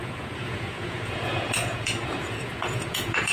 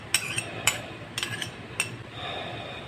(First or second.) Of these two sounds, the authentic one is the second